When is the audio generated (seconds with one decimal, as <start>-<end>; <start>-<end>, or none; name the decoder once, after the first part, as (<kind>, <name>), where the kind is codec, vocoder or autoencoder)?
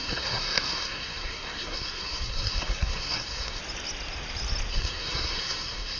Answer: 0.0-3.6 (codec, SNAC); 4.7-6.0